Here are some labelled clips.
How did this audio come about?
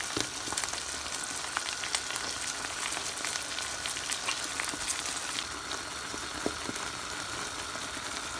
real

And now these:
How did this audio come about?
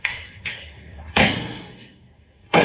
fake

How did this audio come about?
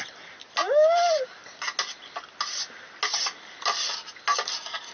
real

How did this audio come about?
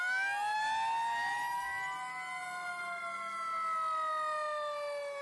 real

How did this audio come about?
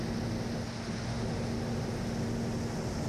real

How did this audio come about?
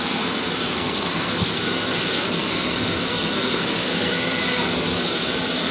fake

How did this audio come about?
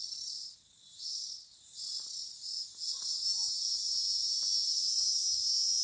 real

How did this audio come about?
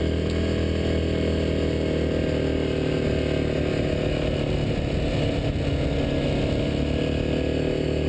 real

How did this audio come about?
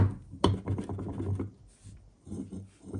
real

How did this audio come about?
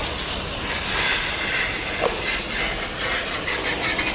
real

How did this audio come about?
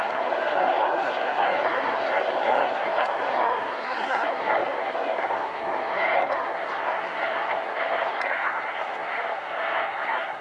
fake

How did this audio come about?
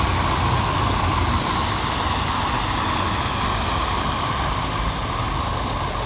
real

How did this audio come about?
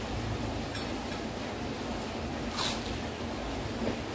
real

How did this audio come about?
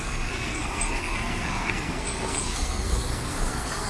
fake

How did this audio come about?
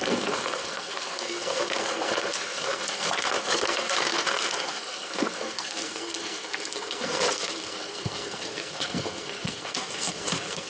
fake